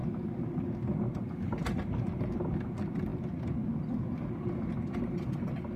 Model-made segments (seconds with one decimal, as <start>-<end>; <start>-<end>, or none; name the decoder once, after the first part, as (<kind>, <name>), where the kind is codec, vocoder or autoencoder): none